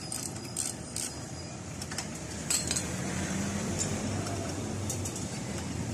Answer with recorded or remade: remade